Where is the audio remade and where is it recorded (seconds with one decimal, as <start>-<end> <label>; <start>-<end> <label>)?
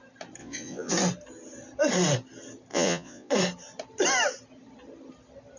0.0-0.4 recorded; 0.4-0.9 remade; 0.9-2.7 recorded; 2.7-3.3 remade; 3.3-5.6 recorded